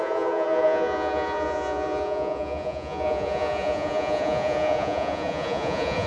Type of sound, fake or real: fake